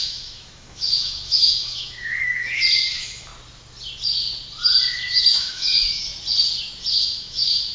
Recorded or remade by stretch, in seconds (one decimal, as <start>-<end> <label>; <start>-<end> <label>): 0.0-3.3 remade; 3.3-4.9 recorded; 4.9-6.1 remade; 6.1-6.9 recorded; 6.9-7.7 remade